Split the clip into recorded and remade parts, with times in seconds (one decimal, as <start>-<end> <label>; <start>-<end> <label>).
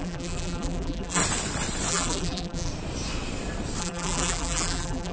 0.0-1.2 remade; 1.2-1.9 recorded; 1.9-2.7 remade; 2.7-3.8 recorded; 3.8-5.1 remade